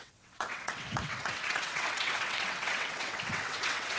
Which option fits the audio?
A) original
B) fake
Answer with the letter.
B